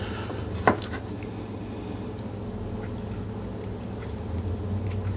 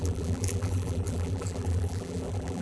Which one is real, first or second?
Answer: first